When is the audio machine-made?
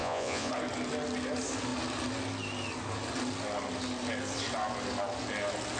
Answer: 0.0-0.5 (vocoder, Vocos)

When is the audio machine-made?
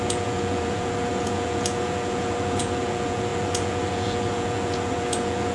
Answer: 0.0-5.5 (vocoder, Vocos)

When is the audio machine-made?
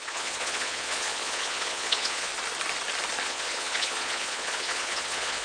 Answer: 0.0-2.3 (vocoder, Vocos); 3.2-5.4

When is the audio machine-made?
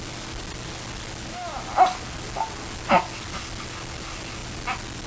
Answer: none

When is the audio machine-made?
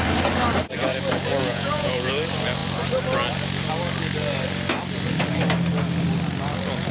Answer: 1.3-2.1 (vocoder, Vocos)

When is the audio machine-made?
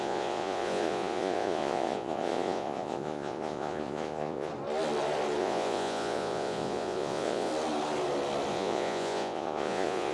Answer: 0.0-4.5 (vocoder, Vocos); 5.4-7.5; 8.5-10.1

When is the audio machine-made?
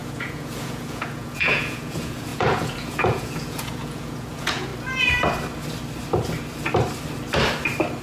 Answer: 0.0-4.7 (vocoder, Vocos)